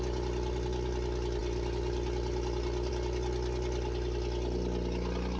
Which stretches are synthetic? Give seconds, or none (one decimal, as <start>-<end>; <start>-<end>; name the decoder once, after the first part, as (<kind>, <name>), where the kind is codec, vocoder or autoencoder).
none